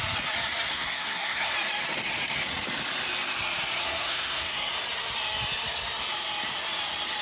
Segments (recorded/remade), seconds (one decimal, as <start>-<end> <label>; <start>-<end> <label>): 0.0-0.7 recorded; 0.7-1.5 remade; 1.5-3.8 recorded; 3.8-4.7 remade; 4.7-7.2 recorded